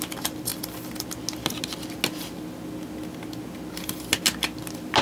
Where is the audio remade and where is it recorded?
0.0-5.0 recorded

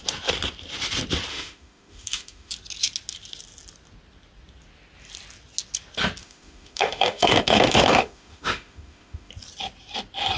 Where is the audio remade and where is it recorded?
0.0-1.3 recorded; 1.3-2.5 remade; 2.5-6.2 recorded; 6.2-9.3 remade; 9.3-10.4 recorded

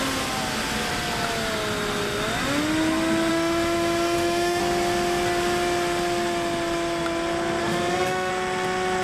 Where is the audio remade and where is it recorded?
0.0-3.3 recorded; 3.3-4.6 remade; 4.6-7.6 recorded; 7.6-8.3 remade; 8.3-9.0 recorded